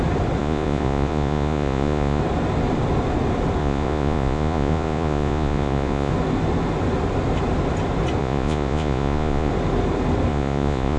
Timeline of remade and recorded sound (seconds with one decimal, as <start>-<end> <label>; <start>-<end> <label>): 0.0-0.4 recorded; 0.4-2.2 remade; 2.2-3.6 recorded; 3.6-6.1 remade; 6.1-8.2 recorded; 8.2-9.5 remade; 9.5-10.3 recorded; 10.3-11.0 remade